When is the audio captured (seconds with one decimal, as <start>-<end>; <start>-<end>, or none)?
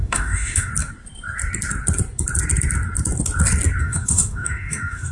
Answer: 0.7-3.8